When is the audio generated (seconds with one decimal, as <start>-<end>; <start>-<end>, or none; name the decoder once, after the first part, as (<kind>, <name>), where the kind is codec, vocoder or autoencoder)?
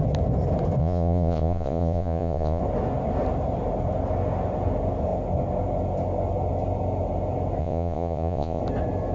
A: 0.8-2.6 (vocoder, Vocos); 7.6-8.6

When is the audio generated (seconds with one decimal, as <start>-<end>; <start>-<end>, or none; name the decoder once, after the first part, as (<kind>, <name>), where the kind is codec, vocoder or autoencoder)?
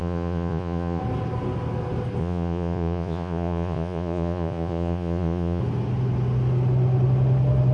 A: 0.0-1.0 (vocoder, Vocos); 2.2-5.6